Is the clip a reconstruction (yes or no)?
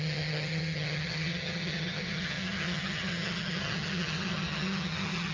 yes